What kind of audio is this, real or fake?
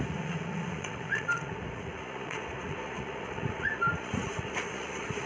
fake